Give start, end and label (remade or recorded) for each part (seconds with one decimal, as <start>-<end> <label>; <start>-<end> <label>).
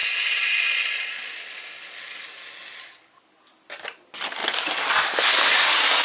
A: 0.0-6.0 recorded